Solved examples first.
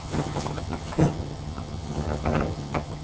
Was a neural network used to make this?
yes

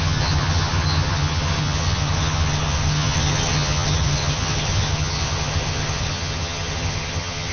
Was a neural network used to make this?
yes